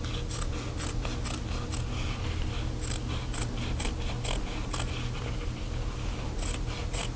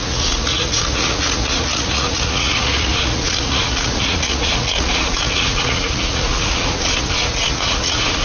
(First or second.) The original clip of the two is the first